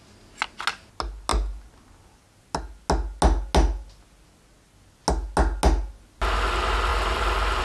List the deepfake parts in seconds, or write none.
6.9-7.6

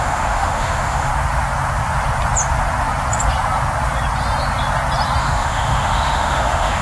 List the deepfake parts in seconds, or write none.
0.0-1.1; 5.2-6.8